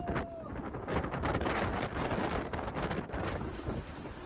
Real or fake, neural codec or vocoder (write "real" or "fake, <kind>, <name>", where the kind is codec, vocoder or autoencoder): real